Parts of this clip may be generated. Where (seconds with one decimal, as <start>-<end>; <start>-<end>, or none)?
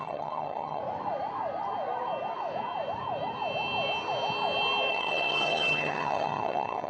0.0-0.8; 4.9-6.9